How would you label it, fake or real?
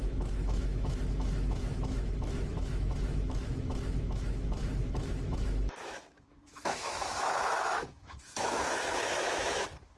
fake